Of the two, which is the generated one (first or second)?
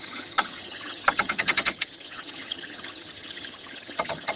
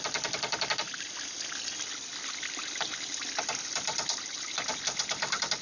first